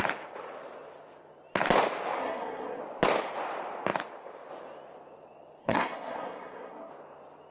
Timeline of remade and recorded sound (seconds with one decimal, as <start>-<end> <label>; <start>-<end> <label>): 0.0-2.2 recorded; 2.2-2.8 remade; 2.8-5.6 recorded; 5.6-6.9 remade; 6.9-7.5 recorded